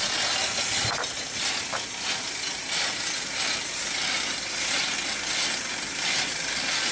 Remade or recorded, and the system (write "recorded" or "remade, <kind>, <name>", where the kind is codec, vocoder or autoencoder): recorded